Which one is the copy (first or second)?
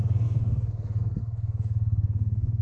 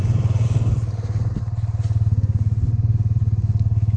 first